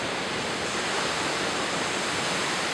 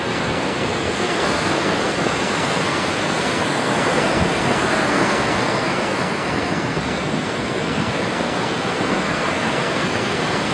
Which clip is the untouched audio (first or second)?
first